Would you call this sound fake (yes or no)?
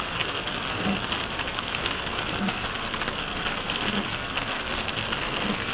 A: yes